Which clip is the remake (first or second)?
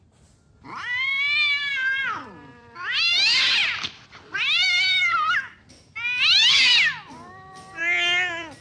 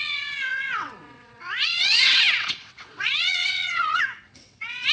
second